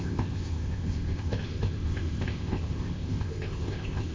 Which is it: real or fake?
fake